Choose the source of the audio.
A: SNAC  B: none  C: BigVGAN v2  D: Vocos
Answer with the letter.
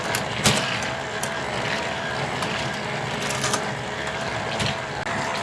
B